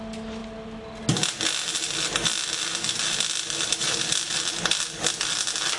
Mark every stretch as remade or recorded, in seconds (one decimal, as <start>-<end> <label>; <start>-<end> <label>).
0.0-5.8 recorded